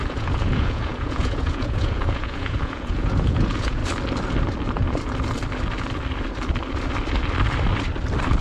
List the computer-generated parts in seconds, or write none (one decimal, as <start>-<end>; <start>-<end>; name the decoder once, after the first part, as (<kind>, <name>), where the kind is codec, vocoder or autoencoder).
0.0-3.8 (vocoder, Vocos)